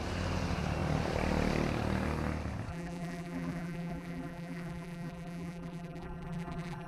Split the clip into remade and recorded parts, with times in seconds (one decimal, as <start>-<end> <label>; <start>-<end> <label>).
0.0-2.7 recorded; 2.7-6.9 remade